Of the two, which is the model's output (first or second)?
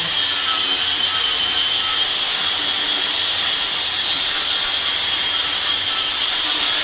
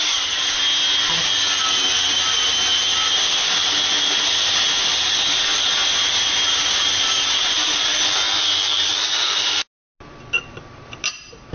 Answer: first